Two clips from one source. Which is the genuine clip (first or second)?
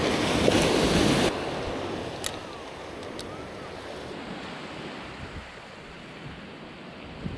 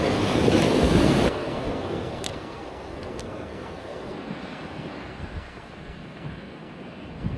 first